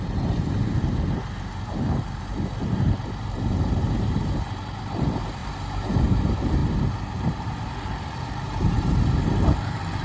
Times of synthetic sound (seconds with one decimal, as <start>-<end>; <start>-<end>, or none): 0.0-10.0